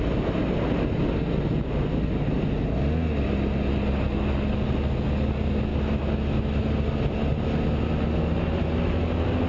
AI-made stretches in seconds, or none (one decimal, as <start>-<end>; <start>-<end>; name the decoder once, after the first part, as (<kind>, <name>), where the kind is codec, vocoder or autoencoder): none